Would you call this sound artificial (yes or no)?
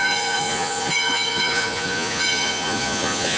yes